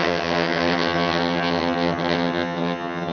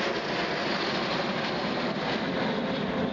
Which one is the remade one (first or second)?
first